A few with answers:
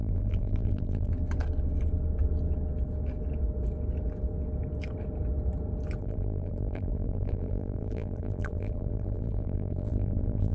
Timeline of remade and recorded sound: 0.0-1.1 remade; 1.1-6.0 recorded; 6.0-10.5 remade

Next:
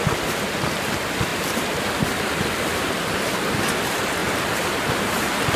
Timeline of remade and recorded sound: 0.0-5.6 recorded

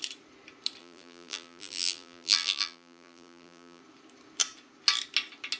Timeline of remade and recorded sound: 0.0-0.8 recorded; 0.8-3.8 remade; 3.8-5.6 recorded

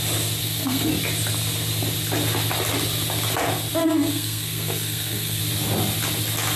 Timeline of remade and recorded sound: 0.0-0.4 recorded; 0.4-0.9 remade; 0.9-3.8 recorded; 3.8-5.4 remade; 5.4-6.6 recorded